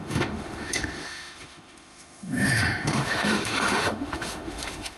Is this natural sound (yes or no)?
no